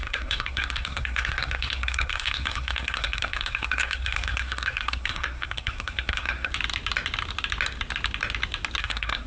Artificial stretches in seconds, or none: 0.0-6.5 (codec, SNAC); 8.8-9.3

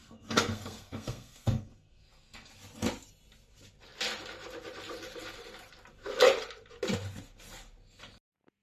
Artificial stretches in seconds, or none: 0.0-2.5 (codec, SNAC)